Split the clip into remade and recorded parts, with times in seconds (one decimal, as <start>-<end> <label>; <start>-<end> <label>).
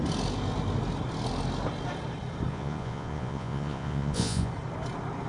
0.0-2.5 recorded; 2.5-4.5 remade; 4.5-5.3 recorded